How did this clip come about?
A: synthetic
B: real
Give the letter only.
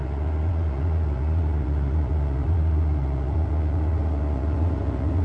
A